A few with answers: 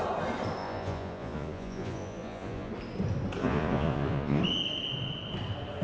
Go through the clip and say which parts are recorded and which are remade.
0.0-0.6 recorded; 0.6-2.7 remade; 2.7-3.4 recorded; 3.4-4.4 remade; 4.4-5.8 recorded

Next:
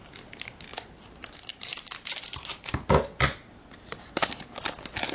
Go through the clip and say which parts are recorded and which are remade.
0.0-5.1 recorded

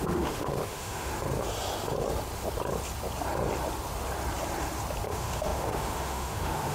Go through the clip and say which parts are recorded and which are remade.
0.0-1.1 remade; 1.1-5.1 recorded; 5.1-6.7 remade

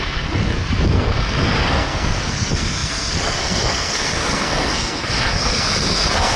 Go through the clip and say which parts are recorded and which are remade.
0.0-6.4 remade

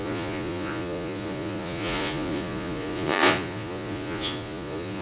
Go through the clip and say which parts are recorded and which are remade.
0.0-5.0 remade

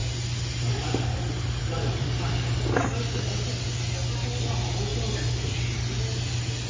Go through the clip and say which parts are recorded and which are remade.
0.0-6.7 recorded

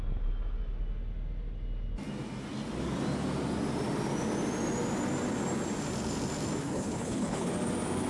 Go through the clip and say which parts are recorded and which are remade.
0.0-6.6 recorded; 6.6-7.5 remade; 7.5-8.1 recorded

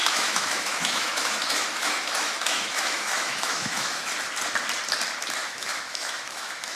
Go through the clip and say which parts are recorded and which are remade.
0.0-4.1 remade; 4.1-5.4 recorded; 5.4-6.8 remade